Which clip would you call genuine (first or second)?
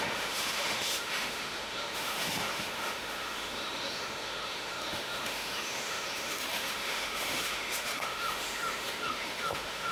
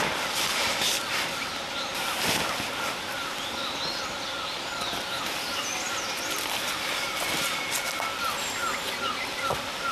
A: second